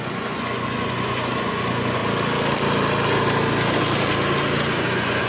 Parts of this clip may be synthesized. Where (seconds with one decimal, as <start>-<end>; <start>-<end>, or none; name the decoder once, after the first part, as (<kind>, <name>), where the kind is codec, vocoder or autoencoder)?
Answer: 0.0-2.0 (vocoder, Vocos); 4.7-5.3